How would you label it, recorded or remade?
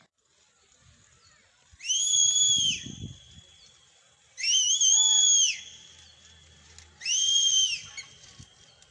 recorded